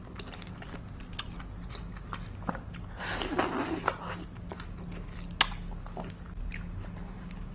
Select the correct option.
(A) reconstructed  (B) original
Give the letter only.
B